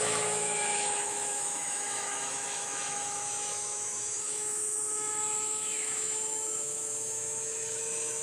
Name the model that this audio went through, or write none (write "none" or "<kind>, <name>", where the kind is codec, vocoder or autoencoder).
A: autoencoder, DAC-VAE